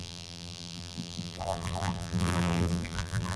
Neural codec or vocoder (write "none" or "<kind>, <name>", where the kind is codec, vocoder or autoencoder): vocoder, BigVGAN v2